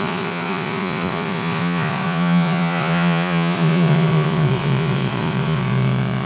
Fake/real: fake